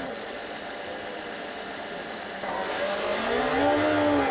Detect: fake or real real